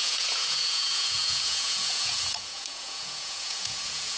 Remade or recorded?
remade